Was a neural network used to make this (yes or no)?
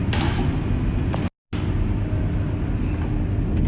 no